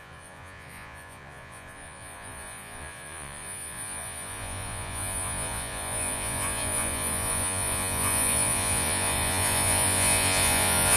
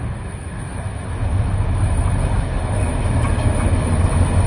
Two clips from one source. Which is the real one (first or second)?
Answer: second